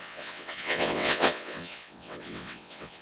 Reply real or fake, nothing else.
fake